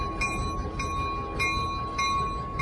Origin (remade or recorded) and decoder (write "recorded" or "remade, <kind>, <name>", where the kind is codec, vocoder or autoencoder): recorded